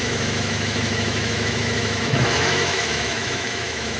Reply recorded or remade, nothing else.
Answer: remade